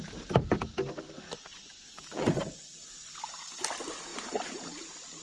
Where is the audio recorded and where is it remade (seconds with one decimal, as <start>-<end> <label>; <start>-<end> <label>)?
0.0-1.5 recorded; 1.5-2.7 remade; 2.7-5.2 recorded